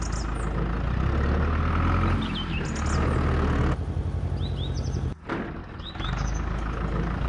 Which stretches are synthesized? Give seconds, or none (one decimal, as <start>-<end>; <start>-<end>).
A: 5.6-7.3